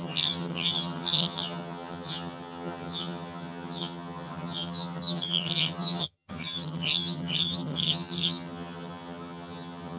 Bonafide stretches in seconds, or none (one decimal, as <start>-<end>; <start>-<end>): none